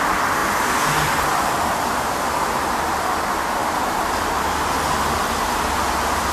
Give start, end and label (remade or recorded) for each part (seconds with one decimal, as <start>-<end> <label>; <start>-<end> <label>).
0.0-3.6 recorded; 3.6-4.7 remade; 4.7-6.3 recorded